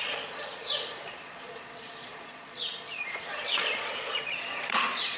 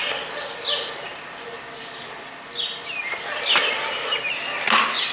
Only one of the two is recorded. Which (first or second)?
second